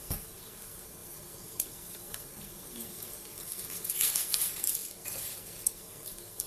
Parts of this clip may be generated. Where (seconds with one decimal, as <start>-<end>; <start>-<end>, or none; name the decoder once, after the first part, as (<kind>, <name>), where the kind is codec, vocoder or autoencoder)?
0.0-6.5 (codec, SNAC)